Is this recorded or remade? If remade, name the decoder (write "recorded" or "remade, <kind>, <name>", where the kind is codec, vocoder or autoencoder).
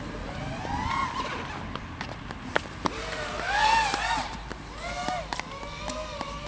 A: recorded